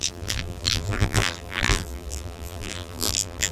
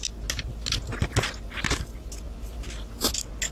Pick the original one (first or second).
second